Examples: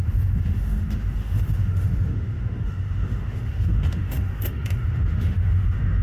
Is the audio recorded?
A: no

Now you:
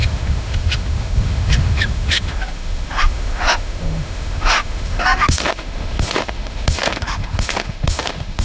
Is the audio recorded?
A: no